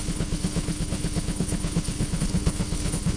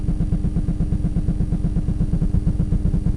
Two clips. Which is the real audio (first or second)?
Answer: second